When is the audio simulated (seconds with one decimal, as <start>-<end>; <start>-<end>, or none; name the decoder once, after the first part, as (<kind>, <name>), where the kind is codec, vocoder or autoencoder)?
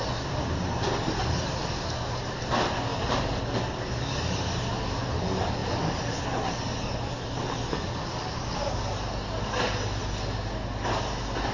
none